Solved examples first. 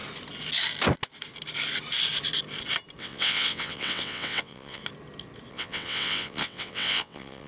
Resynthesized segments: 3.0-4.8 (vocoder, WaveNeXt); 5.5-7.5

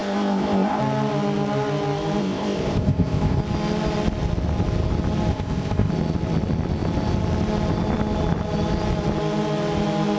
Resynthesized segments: 0.0-0.8 (codec, ZipCodec); 2.2-3.4; 5.3-5.9

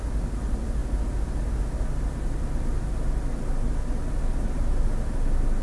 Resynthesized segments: none

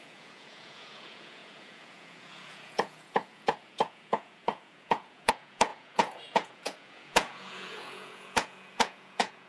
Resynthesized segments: 0.0-9.5 (vocoder, Vocos)

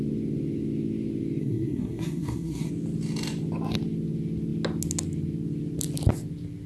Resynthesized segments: 1.4-2.7 (codec, SNAC)